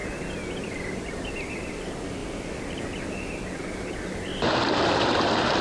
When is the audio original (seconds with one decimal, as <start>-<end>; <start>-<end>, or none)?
0.0-5.6